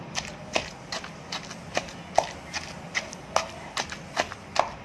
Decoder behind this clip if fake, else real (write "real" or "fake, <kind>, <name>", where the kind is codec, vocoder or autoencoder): real